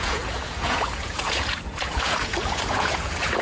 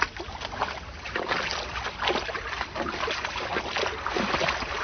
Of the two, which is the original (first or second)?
second